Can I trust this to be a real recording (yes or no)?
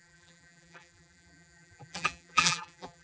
no